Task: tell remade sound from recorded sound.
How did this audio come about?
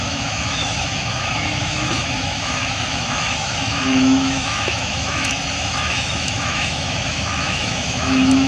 remade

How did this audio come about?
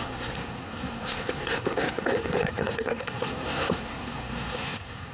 remade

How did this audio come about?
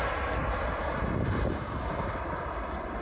recorded